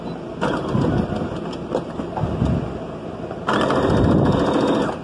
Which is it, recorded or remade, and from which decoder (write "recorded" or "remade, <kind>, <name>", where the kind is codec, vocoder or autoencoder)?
recorded